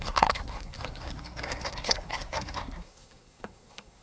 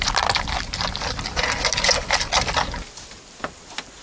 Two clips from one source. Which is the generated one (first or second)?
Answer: first